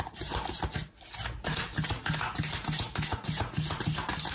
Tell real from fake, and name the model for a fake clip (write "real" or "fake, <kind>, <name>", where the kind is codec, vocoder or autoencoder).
real